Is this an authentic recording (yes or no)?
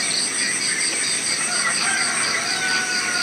yes